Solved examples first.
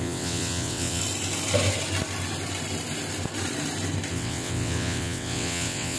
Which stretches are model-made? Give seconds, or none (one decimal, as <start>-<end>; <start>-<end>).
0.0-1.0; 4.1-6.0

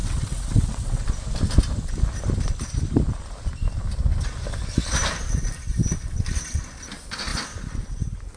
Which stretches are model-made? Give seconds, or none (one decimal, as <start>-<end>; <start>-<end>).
0.0-1.0

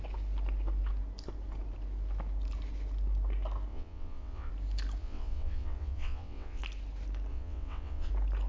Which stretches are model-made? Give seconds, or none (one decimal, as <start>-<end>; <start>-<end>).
3.7-4.5; 5.0-6.6; 7.3-8.1

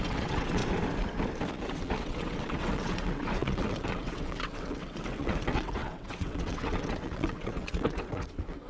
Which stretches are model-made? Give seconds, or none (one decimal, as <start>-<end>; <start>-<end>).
0.0-0.6; 1.5-8.7

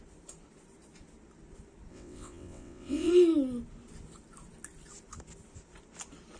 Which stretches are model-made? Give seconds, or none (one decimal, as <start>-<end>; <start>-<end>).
1.9-3.1

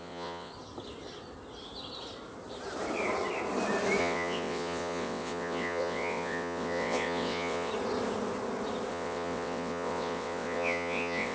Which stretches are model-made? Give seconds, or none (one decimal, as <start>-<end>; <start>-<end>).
0.0-0.5; 4.0-7.7; 8.9-11.3

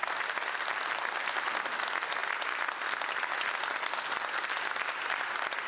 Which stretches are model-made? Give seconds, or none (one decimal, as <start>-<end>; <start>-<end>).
none